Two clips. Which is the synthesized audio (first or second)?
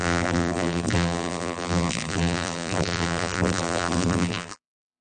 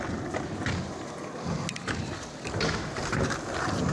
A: first